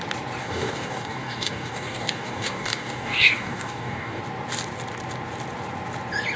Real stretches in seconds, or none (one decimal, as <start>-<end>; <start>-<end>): 0.0-0.4; 4.2-6.4